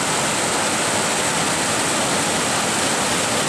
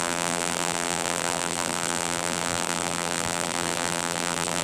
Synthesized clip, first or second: second